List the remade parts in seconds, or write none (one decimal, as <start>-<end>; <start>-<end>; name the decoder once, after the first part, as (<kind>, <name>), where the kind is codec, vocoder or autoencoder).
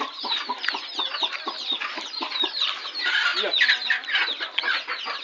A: none